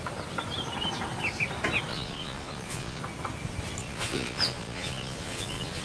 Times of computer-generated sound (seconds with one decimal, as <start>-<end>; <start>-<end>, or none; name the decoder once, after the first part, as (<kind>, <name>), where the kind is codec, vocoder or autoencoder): 1.9-3.0 (vocoder, Vocos); 3.8-5.8